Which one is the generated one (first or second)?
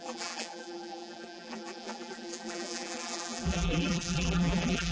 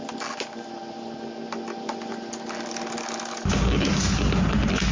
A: first